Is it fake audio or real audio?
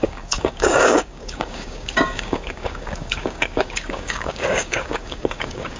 fake